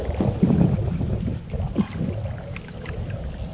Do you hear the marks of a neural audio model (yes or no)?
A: no